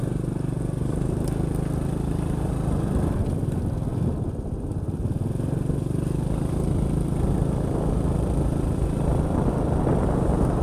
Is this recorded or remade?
recorded